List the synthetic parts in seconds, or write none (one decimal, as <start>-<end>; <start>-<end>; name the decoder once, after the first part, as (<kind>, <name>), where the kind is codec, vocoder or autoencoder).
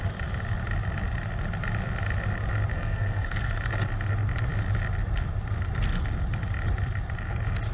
2.7-3.5 (codec, SNAC)